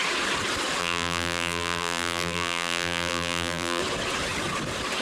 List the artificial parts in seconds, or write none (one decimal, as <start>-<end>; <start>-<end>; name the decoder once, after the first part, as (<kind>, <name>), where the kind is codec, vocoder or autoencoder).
0.8-3.8 (vocoder, BigVGAN v2)